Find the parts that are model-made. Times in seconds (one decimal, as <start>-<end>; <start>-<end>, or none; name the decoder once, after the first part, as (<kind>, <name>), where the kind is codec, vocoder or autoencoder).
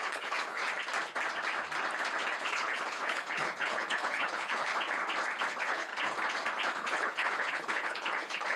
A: 0.0-0.6 (codec, HILCodec); 2.4-4.7; 5.5-5.9; 6.7-8.6